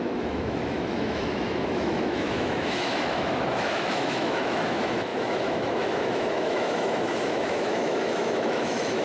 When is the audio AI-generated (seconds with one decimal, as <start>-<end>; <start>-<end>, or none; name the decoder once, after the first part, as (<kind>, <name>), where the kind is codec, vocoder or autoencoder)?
0.0-9.0 (autoencoder, DAC-VAE)